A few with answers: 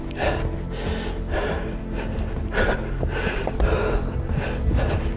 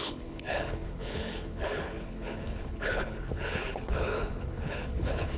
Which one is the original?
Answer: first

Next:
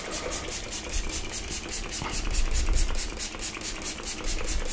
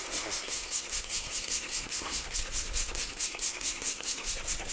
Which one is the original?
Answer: first